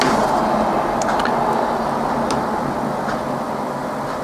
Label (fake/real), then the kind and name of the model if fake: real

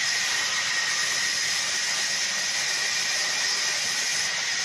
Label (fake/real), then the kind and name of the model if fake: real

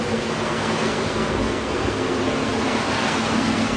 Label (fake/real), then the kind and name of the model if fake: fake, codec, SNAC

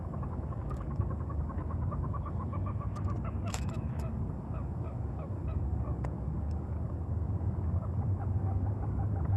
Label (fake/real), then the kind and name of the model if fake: fake, codec, DAC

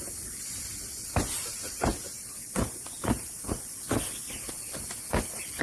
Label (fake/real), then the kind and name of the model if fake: real